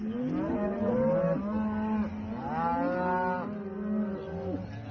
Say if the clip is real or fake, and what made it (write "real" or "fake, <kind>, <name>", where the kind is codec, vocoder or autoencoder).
real